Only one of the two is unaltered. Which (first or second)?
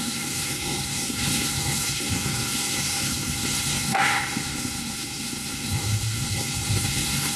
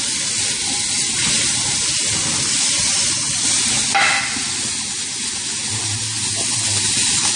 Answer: second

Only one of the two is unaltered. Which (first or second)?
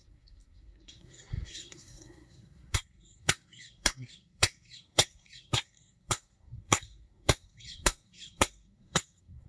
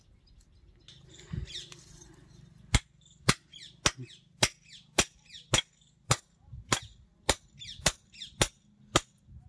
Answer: second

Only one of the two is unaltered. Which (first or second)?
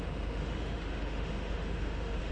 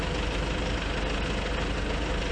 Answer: second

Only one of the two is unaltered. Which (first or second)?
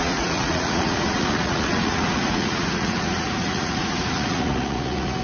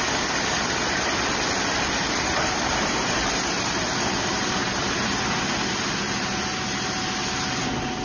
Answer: second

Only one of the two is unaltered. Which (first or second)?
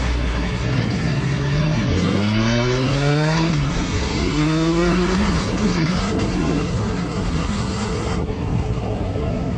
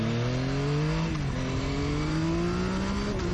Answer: second